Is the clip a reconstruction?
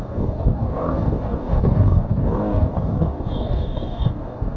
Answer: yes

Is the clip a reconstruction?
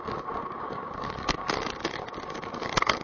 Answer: yes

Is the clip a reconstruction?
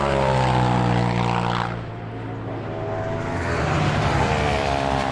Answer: no